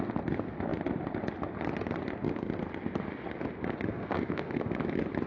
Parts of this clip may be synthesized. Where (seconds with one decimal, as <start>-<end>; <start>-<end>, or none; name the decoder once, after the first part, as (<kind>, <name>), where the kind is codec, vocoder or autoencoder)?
3.9-4.6 (codec, SNAC)